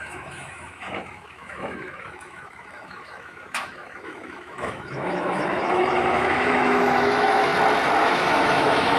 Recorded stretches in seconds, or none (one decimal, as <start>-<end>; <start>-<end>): 7.5-8.0